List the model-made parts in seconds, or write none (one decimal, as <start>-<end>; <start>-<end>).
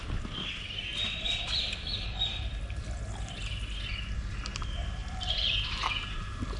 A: 0.9-2.8; 5.0-6.6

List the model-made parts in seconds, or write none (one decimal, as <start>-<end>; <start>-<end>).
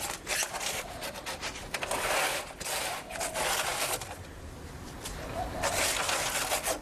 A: 0.4-0.9; 1.5-2.8; 3.7-4.3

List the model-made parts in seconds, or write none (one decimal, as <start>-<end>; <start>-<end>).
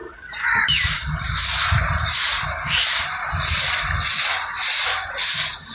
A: 0.0-3.1; 4.1-4.7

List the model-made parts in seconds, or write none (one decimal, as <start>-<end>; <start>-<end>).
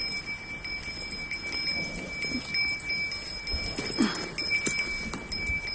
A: none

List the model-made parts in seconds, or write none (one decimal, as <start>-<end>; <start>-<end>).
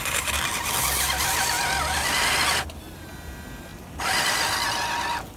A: none